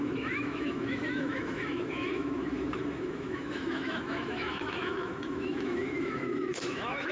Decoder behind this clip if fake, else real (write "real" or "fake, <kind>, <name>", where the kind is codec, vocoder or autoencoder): fake, autoencoder, DAC-VAE